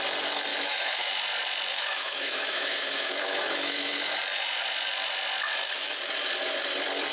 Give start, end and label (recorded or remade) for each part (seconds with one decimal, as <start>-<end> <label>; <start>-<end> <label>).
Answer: 0.0-0.5 recorded; 0.5-1.1 remade; 1.1-1.7 recorded; 1.7-4.2 remade; 4.2-7.1 recorded